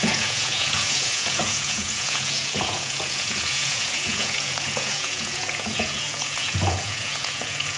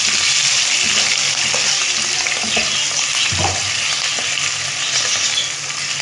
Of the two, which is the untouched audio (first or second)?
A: second